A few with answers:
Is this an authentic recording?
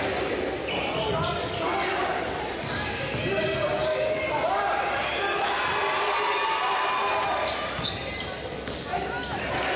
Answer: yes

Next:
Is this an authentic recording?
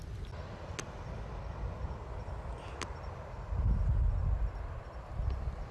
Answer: yes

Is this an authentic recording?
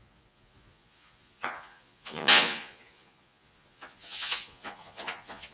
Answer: no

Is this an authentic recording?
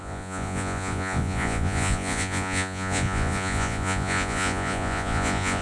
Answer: no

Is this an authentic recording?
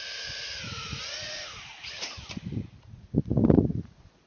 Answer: no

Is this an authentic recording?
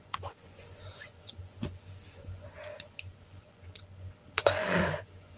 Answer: no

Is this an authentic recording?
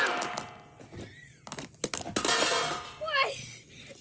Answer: yes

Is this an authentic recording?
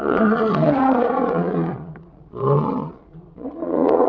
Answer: no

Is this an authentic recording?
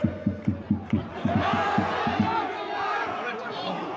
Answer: no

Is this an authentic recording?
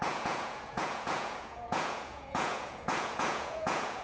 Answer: no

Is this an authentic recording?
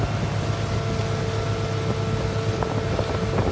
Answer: yes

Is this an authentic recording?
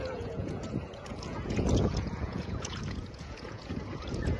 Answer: no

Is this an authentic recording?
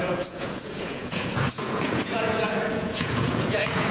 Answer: no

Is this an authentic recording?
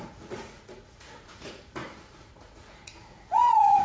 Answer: no